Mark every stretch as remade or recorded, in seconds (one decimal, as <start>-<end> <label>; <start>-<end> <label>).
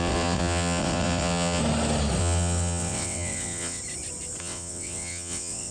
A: 0.0-1.6 remade; 1.6-2.2 recorded; 2.2-3.8 remade; 3.8-4.4 recorded; 4.4-5.7 remade